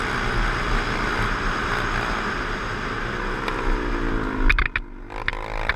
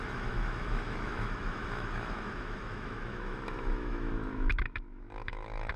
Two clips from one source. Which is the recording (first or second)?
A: first